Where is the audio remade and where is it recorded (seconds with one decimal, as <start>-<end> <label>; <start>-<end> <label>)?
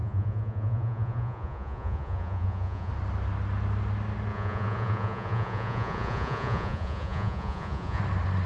0.0-2.9 remade; 2.9-4.3 recorded; 4.3-8.0 remade; 8.0-8.5 recorded